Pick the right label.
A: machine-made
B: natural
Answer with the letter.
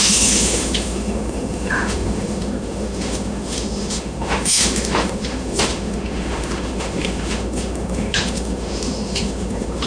A